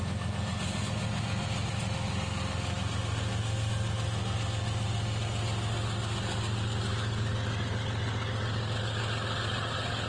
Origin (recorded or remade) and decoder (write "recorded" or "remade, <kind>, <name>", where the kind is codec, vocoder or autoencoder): recorded